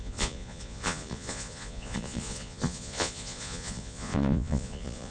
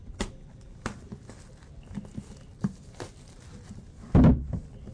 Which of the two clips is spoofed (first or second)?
first